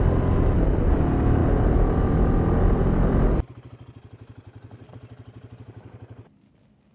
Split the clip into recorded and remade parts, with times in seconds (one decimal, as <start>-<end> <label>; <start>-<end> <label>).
0.0-6.9 recorded